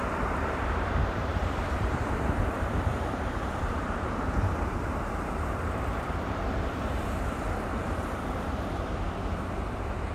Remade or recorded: remade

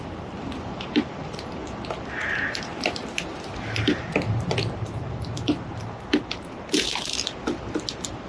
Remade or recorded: recorded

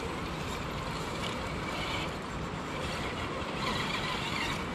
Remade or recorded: recorded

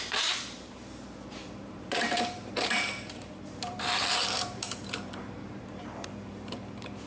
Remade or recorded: remade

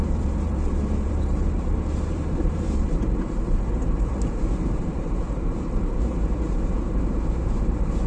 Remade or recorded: remade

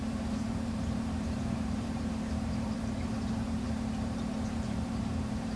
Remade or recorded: remade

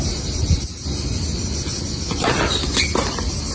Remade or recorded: recorded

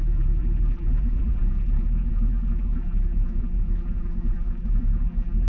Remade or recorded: remade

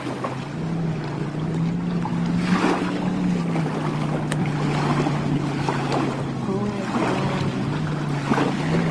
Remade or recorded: recorded